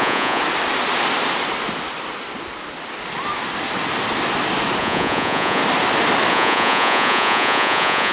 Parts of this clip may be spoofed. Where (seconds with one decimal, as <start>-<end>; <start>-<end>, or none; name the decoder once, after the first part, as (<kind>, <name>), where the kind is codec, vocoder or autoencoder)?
0.0-0.4 (vocoder, Vocos); 4.8-5.6; 6.3-8.1